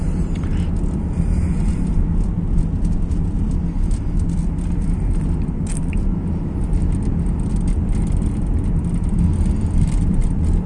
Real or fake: real